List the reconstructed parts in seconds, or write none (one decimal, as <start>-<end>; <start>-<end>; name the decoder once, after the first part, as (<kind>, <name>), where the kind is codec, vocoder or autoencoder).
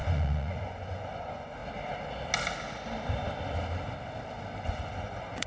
0.0-1.6 (vocoder, Vocos); 4.7-5.5